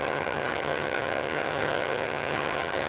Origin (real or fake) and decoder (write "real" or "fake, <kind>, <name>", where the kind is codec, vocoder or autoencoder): fake, vocoder, HiFi-GAN